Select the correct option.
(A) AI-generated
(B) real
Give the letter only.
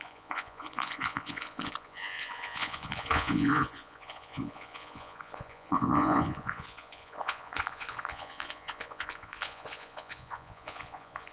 A